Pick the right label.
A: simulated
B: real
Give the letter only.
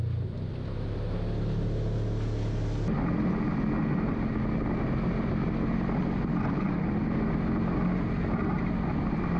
B